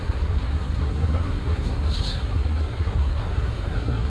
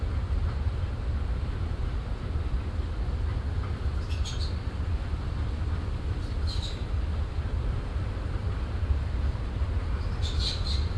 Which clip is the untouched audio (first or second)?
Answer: second